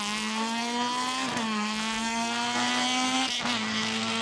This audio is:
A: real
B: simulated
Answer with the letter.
B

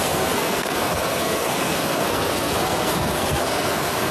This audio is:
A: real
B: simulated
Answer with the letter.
B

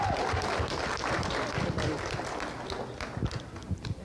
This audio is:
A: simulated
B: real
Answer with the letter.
B